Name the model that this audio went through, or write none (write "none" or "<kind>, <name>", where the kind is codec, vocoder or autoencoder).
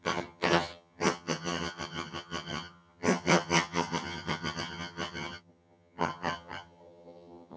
vocoder, HiFi-GAN